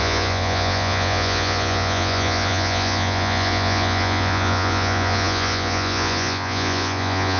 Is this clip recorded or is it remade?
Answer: remade